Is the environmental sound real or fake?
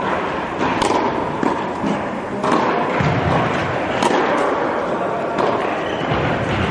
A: real